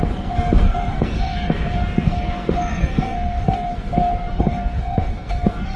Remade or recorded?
remade